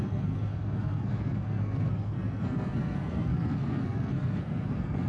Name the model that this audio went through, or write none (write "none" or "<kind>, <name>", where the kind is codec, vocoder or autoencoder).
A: codec, SNAC